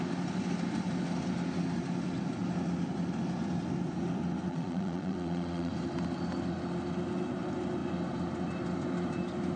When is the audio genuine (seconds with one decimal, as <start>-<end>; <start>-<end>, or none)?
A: 0.0-4.5; 5.7-9.6